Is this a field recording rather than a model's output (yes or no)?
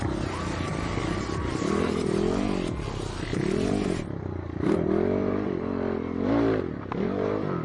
yes